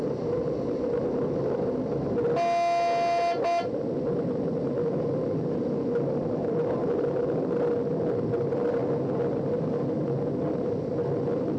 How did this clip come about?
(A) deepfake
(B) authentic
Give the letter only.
B